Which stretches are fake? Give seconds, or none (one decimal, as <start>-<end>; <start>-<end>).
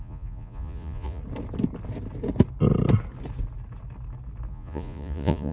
0.0-1.2; 4.5-5.5